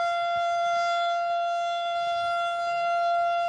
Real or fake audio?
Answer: fake